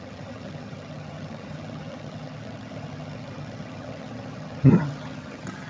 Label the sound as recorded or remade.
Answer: remade